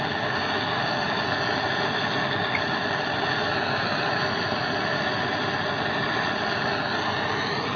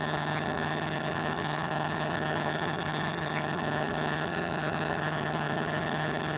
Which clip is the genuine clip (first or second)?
first